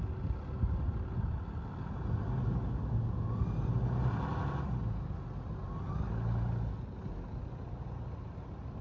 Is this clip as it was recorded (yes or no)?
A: yes